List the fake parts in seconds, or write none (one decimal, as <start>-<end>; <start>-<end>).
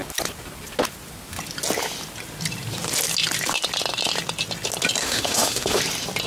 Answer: 5.0-5.8